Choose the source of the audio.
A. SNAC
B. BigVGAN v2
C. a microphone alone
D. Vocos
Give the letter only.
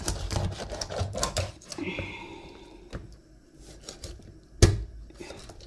C